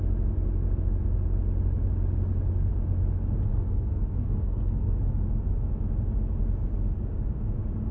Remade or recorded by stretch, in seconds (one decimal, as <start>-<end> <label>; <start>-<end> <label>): 0.0-3.5 recorded; 3.5-5.1 remade; 5.1-7.9 recorded